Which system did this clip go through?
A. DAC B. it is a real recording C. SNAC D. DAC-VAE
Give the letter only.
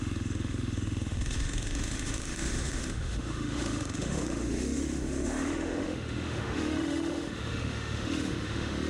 D